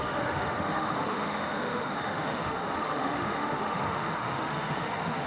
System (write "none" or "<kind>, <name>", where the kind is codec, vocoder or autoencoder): autoencoder, DAC-VAE